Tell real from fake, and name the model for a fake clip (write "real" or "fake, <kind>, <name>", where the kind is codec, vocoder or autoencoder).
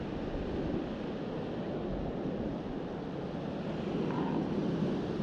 real